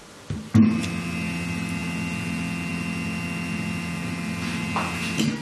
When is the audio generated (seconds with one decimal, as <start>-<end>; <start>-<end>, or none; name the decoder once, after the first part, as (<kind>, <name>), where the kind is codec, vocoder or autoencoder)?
none